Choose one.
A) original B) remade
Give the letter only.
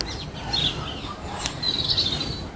A